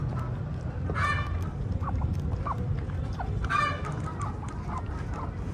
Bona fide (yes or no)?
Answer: yes